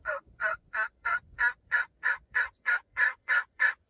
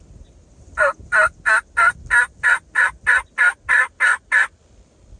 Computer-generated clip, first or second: first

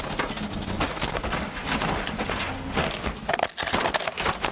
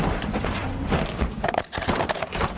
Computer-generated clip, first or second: second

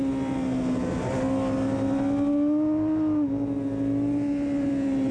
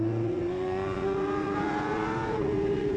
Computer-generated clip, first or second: second